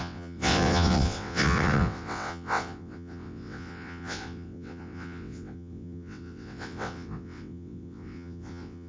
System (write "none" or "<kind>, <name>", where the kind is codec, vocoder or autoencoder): vocoder, WaveNeXt